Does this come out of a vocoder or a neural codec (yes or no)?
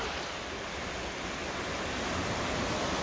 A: no